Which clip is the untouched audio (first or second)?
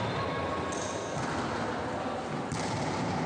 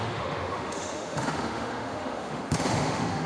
first